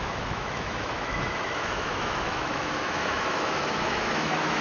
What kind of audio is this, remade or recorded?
remade